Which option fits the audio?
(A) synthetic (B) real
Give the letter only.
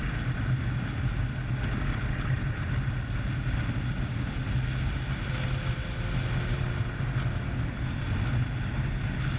B